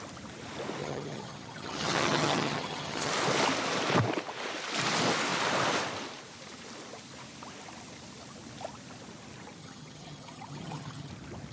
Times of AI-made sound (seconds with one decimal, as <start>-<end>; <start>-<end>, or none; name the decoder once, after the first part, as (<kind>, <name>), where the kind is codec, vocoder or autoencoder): 0.8-3.1 (vocoder, HiFi-GAN); 9.6-11.1